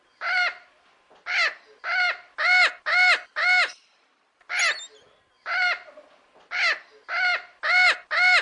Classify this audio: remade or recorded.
recorded